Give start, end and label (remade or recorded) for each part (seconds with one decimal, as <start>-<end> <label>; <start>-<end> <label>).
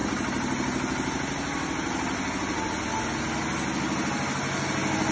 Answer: 0.0-5.1 recorded